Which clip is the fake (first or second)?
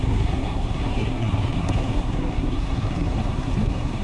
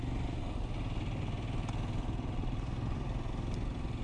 first